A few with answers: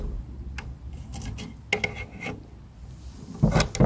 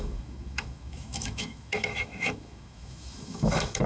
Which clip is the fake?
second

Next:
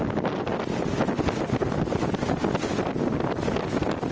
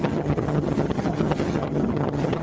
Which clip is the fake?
second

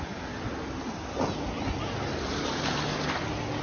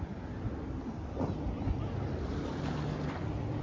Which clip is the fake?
second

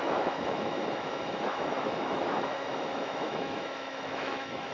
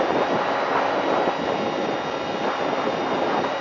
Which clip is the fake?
first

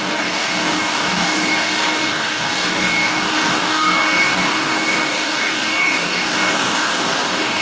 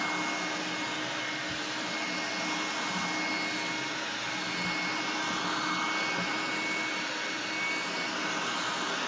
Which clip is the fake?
first